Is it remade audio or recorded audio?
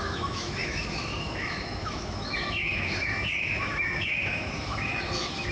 remade